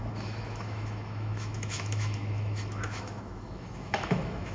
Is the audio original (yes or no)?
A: no